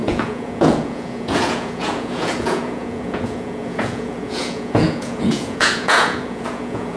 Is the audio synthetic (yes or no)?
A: yes